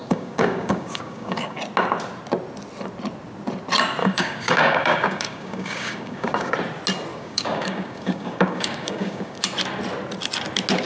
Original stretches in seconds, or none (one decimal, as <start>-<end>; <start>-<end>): 1.6-4.0; 6.5-7.1; 9.4-10.8